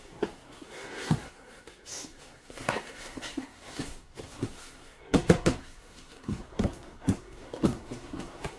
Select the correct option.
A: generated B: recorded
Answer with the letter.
A